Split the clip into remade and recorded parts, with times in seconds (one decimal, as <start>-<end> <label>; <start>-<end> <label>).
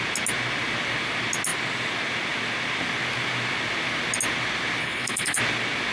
0.0-4.8 recorded; 4.8-5.4 remade; 5.4-5.9 recorded